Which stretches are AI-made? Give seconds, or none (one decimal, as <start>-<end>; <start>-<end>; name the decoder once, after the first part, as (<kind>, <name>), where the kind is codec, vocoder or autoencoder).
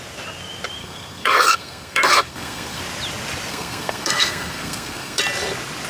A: 0.8-2.8 (codec, SNAC); 3.5-5.2